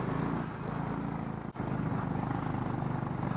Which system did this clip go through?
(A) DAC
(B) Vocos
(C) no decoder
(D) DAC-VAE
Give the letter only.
C